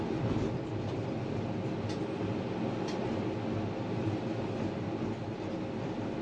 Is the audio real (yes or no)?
yes